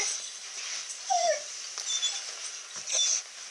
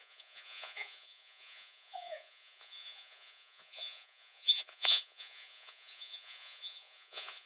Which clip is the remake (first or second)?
second